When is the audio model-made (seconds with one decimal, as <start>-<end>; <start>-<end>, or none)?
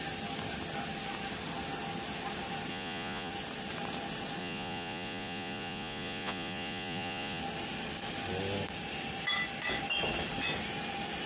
2.7-3.3; 4.4-7.4